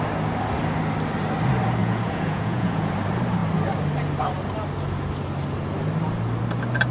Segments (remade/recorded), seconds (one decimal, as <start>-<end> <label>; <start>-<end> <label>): 0.0-1.8 recorded; 1.8-2.9 remade; 2.9-6.9 recorded